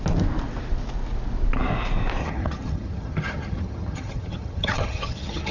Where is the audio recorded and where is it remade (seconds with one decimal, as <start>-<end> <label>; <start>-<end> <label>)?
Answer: 0.0-2.2 recorded; 2.2-5.5 remade